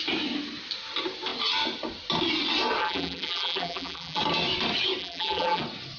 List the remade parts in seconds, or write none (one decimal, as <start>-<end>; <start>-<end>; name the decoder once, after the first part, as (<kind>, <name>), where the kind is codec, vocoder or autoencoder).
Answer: 2.8-4.2 (vocoder, BigVGAN v2); 5.0-5.6